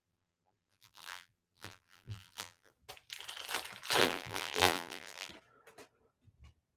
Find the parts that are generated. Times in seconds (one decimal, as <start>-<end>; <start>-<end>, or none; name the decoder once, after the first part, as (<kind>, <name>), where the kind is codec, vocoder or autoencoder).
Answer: 0.0-2.7 (vocoder, BigVGAN v2); 4.0-5.3